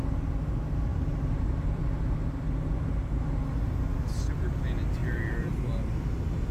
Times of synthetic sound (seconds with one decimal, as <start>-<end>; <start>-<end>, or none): 0.9-1.8; 3.9-4.6; 5.0-5.5